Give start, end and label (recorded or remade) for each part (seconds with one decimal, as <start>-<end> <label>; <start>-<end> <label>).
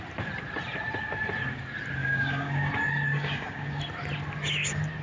0.0-2.0 recorded; 2.0-2.7 remade; 2.7-3.1 recorded; 3.1-3.8 remade; 3.8-5.0 recorded